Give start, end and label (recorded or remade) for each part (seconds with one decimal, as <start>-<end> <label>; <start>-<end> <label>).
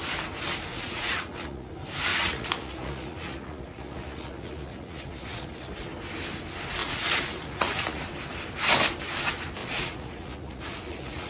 0.0-0.7 recorded; 0.7-1.7 remade; 1.7-2.1 recorded; 2.1-5.8 remade; 5.8-6.8 recorded; 6.8-8.0 remade; 8.0-9.6 recorded; 9.6-11.3 remade